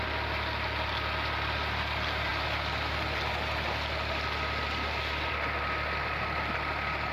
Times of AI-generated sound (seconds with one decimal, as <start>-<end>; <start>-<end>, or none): none